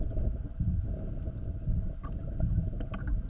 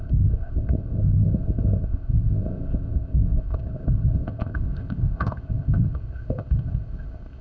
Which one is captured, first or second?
first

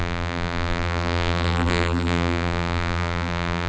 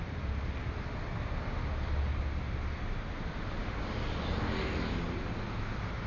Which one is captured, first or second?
second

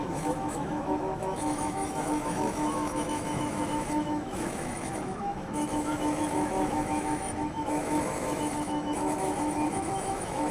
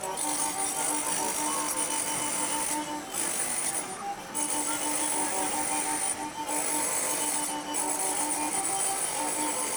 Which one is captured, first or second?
second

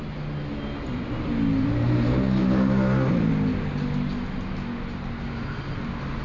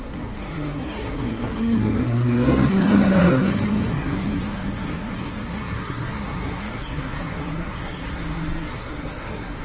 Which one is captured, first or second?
first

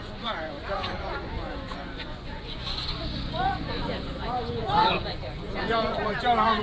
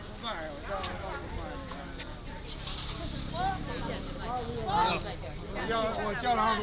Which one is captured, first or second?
second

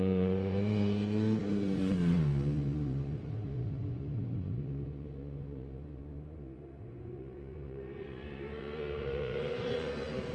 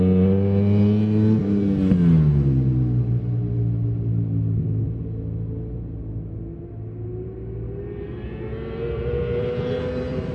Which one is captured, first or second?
second